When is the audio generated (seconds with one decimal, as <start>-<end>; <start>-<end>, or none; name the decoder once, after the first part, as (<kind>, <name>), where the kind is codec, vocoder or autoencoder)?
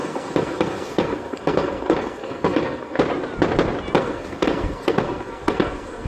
0.0-3.0 (codec, SNAC); 4.0-6.1